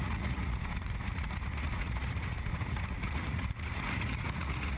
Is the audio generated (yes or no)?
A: yes